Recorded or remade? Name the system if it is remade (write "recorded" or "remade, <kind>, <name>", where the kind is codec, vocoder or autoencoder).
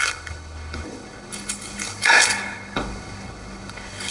remade, codec, HILCodec